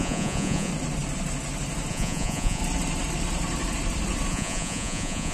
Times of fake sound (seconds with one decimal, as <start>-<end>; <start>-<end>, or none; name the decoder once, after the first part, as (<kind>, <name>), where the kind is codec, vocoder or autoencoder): 0.0-0.7 (vocoder, Vocos); 1.9-2.6; 4.3-5.3